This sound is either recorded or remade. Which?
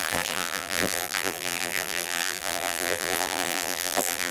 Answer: remade